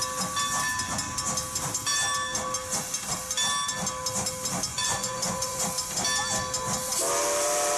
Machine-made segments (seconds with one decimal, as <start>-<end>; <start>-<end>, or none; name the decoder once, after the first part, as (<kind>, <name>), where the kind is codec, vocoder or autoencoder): 4.7-5.6 (vocoder, Vocos)